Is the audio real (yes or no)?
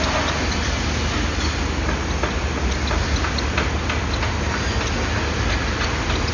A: yes